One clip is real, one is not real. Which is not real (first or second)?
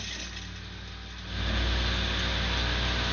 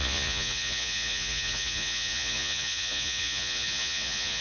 second